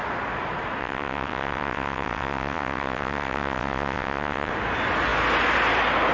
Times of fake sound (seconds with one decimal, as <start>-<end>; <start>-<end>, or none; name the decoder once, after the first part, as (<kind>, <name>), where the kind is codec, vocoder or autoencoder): 0.8-4.5 (vocoder, WaveNeXt)